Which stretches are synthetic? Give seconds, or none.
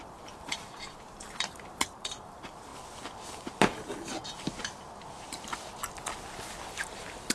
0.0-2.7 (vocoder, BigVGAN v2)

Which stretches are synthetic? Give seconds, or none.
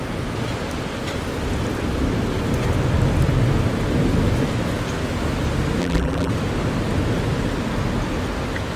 5.8-6.3 (vocoder, BigVGAN v2)